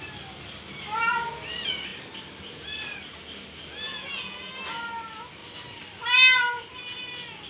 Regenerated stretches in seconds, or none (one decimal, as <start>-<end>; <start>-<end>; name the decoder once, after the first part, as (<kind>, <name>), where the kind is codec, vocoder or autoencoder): 3.9-4.5 (vocoder, Vocos)